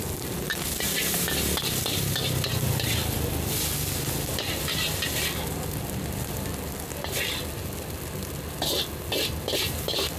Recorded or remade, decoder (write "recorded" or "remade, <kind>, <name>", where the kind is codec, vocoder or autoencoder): recorded